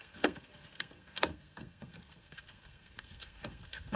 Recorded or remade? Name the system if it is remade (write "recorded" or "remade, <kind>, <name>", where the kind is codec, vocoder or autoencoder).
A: remade, codec, SNAC